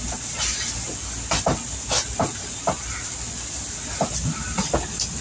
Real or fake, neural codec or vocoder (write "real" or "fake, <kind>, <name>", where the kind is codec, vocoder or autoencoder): real